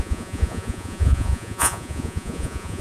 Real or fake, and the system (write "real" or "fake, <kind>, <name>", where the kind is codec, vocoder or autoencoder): fake, vocoder, Vocos